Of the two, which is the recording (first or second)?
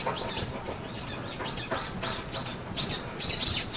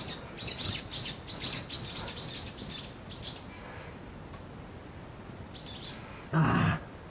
second